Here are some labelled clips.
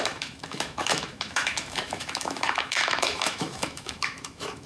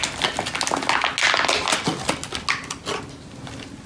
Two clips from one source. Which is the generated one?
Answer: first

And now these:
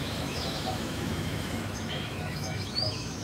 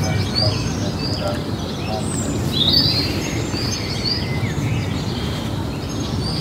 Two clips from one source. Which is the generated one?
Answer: first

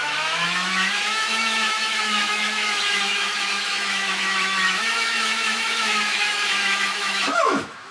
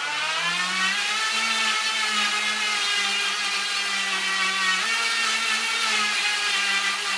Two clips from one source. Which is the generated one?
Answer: first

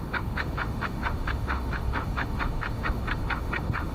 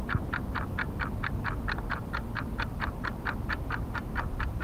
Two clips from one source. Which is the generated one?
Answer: first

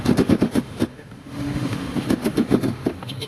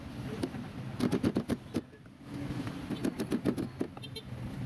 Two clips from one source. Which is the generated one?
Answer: first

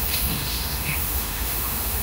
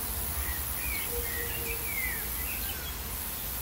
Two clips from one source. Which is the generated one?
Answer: first